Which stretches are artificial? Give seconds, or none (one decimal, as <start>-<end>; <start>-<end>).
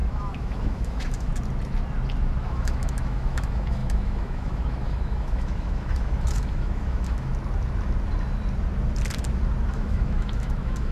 0.0-1.3; 2.4-7.3; 9.7-10.9